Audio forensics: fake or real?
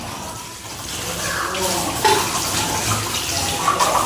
real